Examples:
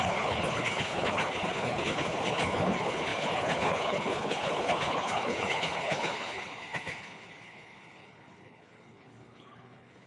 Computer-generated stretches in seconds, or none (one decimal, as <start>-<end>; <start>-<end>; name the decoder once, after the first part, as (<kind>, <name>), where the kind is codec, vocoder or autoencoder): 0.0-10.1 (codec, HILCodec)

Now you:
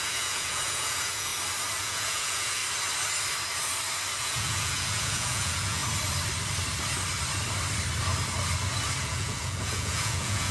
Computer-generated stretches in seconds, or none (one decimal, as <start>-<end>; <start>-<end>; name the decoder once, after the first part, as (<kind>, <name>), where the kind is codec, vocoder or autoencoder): 0.0-1.3 (vocoder, Vocos); 1.8-2.6; 4.2-5.8; 9.0-10.5

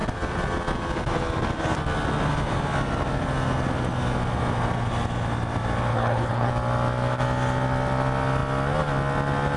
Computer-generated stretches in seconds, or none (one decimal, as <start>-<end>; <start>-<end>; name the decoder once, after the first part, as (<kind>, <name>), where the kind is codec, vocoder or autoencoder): 5.9-6.5 (codec, HILCodec)